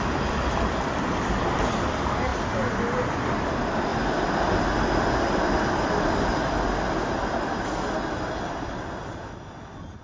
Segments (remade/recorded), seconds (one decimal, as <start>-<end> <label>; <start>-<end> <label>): 0.0-10.0 recorded